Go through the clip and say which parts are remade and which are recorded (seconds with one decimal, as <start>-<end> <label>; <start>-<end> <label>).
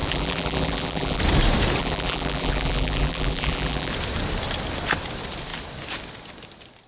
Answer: 0.0-1.2 remade; 1.2-1.8 recorded; 1.8-3.9 remade; 3.9-6.9 recorded